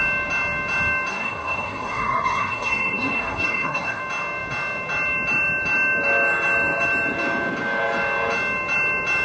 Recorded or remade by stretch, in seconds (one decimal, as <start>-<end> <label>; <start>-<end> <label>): 0.0-1.1 recorded; 1.1-4.0 remade; 4.0-9.2 recorded